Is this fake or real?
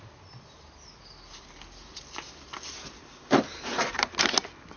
real